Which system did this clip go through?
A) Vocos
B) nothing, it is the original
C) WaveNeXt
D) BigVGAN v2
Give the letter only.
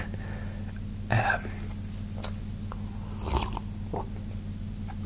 B